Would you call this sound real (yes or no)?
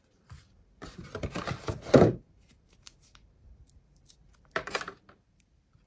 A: no